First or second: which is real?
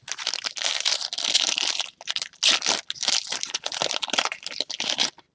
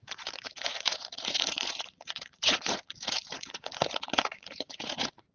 first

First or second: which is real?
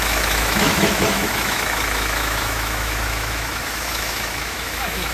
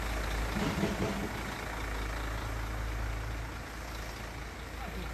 second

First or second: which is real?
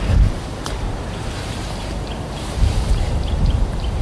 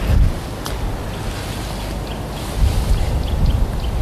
second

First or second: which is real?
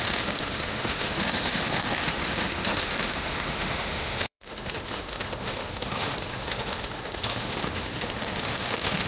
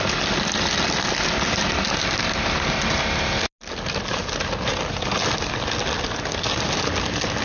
second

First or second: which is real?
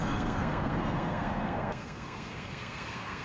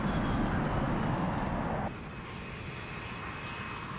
second